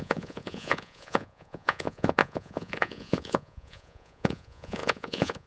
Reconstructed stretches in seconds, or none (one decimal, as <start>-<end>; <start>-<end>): 0.0-5.5